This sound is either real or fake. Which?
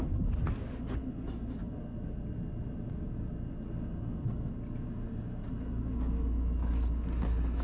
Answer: real